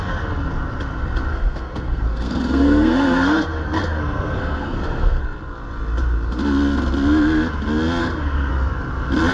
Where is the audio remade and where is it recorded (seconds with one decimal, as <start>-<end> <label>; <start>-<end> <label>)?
0.0-1.3 recorded; 1.3-5.2 remade; 5.2-8.0 recorded; 8.0-8.5 remade; 8.5-9.3 recorded